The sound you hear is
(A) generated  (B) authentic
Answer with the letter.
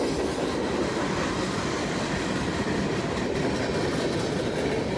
B